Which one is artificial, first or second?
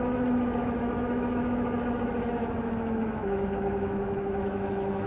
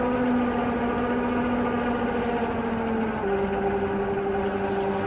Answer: first